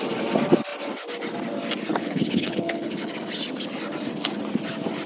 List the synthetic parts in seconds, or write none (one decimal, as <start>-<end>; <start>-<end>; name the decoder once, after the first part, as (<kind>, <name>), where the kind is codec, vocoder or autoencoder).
1.9-3.1 (codec, HILCodec)